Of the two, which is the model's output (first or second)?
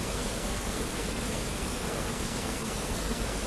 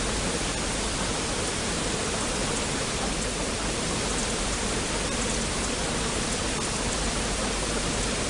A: first